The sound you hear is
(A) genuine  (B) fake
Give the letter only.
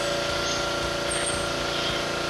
A